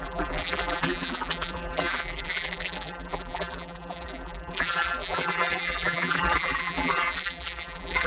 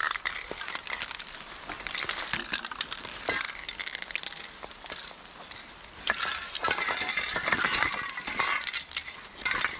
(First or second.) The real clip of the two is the second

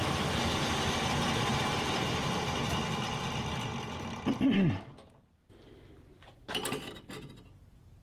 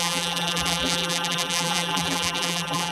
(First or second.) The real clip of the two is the first